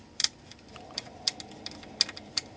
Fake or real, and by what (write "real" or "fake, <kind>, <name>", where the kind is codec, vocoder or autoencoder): real